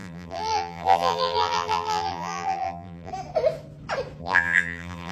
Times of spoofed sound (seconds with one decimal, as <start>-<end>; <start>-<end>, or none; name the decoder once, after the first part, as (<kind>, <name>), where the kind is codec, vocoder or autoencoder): 0.0-3.1 (vocoder, BigVGAN v2); 4.2-5.1